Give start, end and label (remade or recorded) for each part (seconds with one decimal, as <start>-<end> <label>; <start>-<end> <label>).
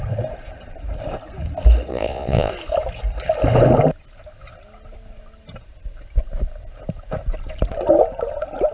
0.0-1.9 recorded; 1.9-2.5 remade; 2.5-8.7 recorded